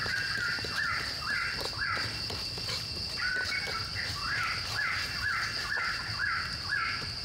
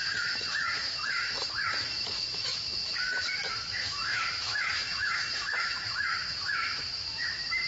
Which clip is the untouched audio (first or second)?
first